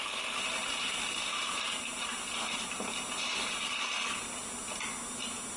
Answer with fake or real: real